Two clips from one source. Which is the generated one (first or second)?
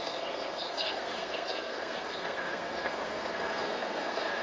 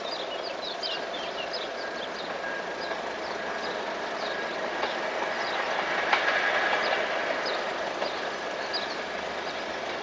first